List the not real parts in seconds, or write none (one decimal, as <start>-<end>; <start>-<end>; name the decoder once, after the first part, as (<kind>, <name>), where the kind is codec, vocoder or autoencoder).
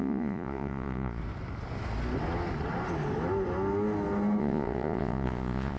0.0-1.2 (vocoder, Vocos); 4.4-5.8